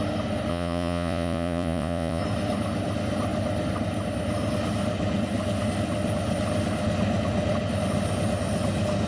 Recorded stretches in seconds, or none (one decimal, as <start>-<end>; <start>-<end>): 0.0-0.5; 2.2-9.1